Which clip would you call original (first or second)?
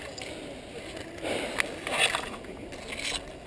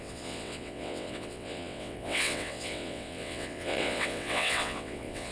first